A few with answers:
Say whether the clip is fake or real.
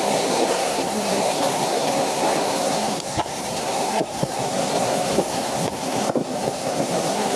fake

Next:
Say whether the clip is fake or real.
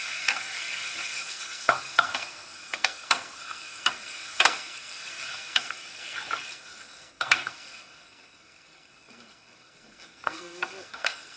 fake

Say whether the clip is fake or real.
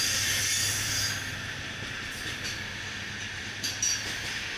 real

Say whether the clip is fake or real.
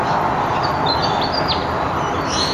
real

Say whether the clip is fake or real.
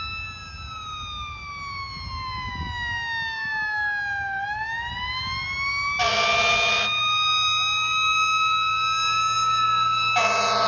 real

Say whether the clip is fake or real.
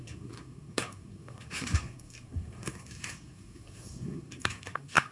fake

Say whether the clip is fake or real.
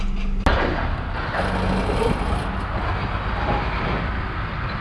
real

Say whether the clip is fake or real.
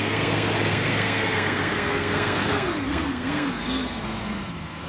fake